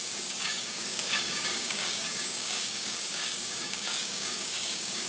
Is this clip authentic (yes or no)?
no